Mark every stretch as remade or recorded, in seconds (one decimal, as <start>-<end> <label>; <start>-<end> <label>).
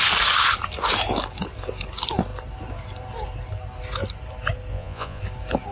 0.0-4.7 recorded; 4.7-5.2 remade; 5.2-5.7 recorded